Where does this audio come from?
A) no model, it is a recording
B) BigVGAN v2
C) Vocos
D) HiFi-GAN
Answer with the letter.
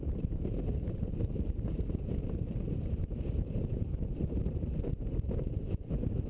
B